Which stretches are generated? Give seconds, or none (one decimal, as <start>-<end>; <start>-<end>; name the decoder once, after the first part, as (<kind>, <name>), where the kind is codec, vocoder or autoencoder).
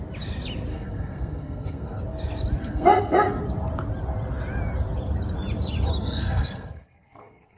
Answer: 0.7-2.0 (codec, SNAC); 2.6-3.4; 6.0-7.6